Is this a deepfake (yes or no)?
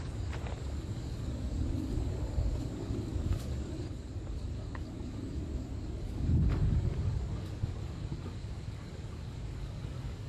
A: yes